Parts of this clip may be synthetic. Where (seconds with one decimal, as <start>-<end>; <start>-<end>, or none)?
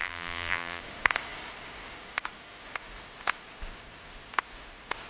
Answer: 0.0-0.8